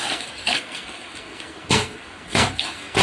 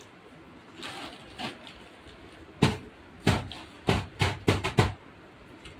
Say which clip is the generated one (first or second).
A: first